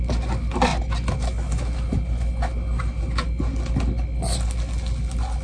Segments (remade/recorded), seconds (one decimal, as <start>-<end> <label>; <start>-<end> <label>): 0.0-5.4 recorded